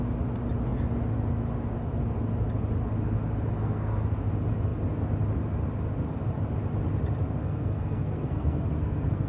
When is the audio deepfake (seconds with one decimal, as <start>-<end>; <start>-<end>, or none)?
3.6-4.1; 7.4-9.3